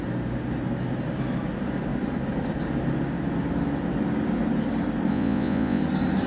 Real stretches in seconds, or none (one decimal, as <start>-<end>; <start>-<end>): 0.0-5.1; 5.8-6.3